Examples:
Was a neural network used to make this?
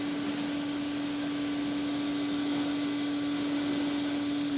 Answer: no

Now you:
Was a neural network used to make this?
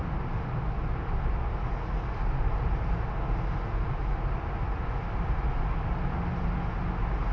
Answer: no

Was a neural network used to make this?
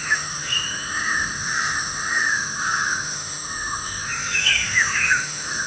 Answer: yes